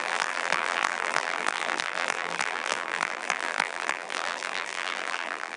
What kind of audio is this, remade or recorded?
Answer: remade